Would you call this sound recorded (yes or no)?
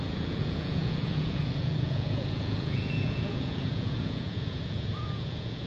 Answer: no